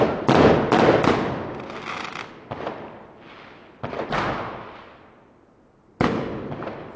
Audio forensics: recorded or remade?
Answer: recorded